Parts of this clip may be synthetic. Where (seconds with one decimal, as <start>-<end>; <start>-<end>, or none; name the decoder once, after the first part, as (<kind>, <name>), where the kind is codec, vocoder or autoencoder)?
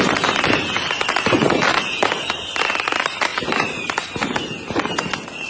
none